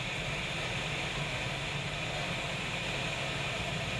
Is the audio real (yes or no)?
yes